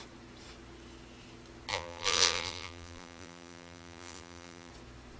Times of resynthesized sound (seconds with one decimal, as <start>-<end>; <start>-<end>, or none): 1.7-4.7